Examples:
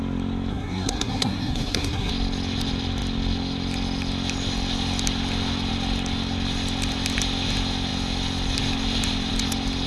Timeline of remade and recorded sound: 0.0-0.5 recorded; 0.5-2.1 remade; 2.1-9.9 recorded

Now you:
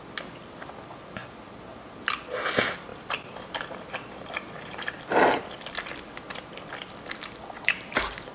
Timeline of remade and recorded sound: 0.0-1.2 recorded; 1.2-1.9 remade; 1.9-2.9 recorded; 2.9-5.0 remade; 5.0-8.3 recorded

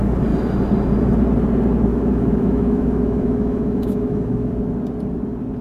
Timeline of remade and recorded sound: 0.0-1.9 recorded; 1.9-4.5 remade; 4.5-5.6 recorded